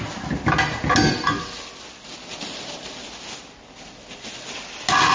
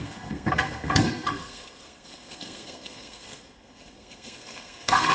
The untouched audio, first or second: first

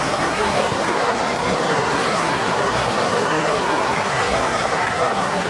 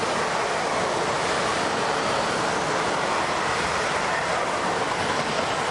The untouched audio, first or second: second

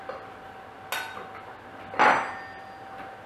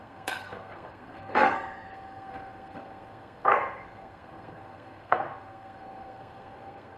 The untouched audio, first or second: first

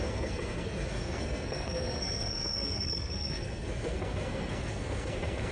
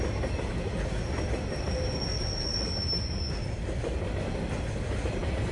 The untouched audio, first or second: second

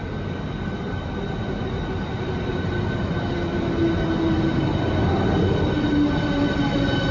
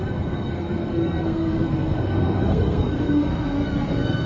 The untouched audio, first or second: first